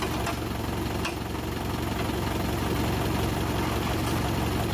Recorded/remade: recorded